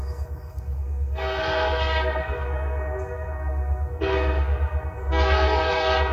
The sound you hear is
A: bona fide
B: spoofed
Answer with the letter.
B